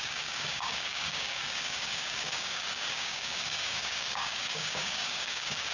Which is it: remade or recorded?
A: remade